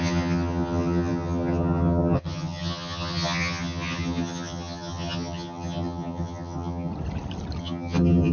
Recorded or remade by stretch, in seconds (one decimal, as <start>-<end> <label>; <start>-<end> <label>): 0.0-6.9 remade; 6.9-7.6 recorded; 7.6-8.3 remade